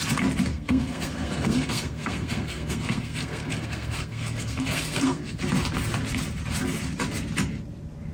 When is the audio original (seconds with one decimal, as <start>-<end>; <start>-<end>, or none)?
0.0-0.5; 5.4-8.1